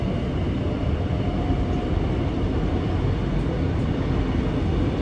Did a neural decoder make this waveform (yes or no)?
no